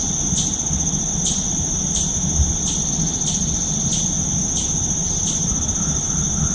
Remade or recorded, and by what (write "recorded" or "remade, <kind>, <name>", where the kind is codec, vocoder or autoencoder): recorded